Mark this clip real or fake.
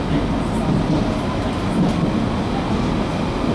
real